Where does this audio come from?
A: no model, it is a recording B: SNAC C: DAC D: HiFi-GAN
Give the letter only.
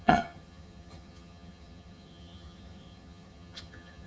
D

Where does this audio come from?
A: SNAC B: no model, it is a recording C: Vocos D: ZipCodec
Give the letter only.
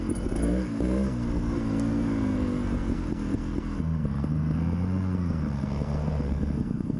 A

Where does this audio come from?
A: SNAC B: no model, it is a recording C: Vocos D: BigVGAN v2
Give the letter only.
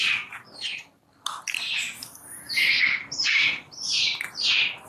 B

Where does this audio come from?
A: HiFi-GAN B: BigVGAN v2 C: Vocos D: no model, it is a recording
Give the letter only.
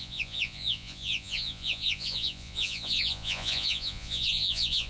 C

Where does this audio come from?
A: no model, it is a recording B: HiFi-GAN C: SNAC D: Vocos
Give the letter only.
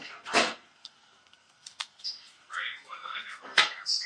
C